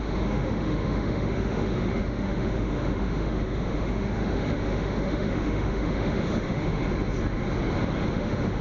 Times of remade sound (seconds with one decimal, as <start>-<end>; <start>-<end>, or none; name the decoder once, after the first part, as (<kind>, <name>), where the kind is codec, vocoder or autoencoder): 0.0-6.8 (autoencoder, DAC-VAE); 8.1-8.6